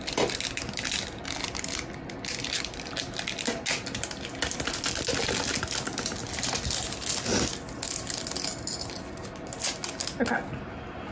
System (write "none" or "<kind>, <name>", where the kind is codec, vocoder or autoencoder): none